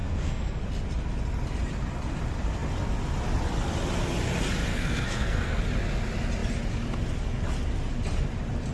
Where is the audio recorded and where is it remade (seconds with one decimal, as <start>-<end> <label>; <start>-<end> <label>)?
0.0-0.6 remade; 0.6-4.7 recorded; 4.7-5.6 remade; 5.6-8.7 recorded